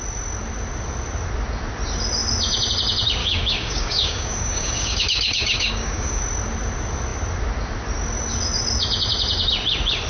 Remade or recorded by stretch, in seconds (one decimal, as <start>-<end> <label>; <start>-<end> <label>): 0.0-3.2 recorded; 3.2-6.2 remade; 6.2-10.1 recorded